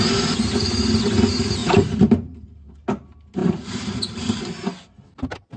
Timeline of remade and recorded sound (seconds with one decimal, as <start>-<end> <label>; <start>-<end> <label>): 0.0-1.6 recorded; 1.6-2.8 remade; 2.8-3.4 recorded; 3.4-4.4 remade; 4.4-5.6 recorded